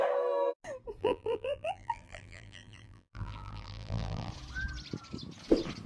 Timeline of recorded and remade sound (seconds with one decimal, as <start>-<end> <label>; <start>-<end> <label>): 0.0-1.0 recorded; 1.0-4.3 remade; 4.3-5.9 recorded